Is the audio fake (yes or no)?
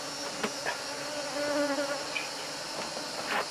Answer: no